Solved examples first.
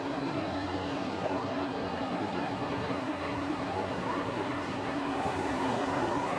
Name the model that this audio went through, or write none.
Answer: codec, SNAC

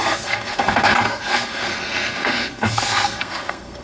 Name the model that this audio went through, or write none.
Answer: codec, SNAC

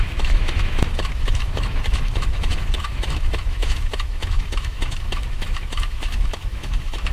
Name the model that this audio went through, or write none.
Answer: autoencoder, DAC-VAE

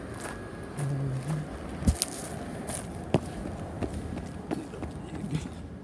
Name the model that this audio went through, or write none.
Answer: none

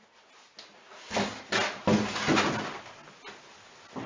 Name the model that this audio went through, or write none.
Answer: none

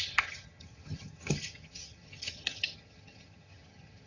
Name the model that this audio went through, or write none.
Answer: vocoder, HiFi-GAN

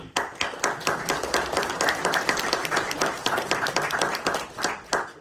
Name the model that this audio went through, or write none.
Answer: vocoder, BigVGAN v2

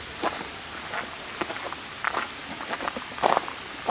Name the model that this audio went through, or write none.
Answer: none